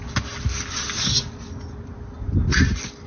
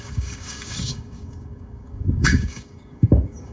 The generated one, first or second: second